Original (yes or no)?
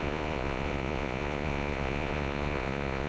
no